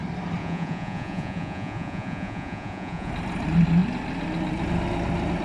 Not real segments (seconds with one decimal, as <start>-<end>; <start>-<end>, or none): 0.4-3.1